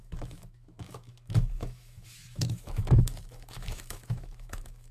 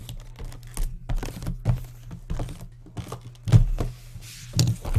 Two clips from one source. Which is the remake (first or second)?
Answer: first